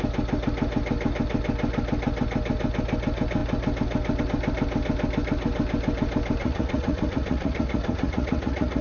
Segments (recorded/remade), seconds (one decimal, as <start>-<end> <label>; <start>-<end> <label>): 0.0-6.4 recorded; 6.4-8.8 remade